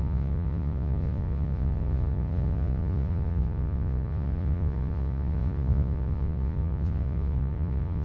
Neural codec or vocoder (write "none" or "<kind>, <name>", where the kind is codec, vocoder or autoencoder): vocoder, Vocos